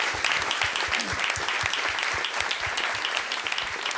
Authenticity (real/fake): real